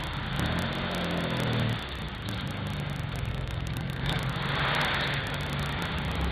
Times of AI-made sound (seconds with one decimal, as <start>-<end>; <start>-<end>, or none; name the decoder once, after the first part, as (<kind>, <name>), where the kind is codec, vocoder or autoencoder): 3.3-4.2 (codec, SNAC)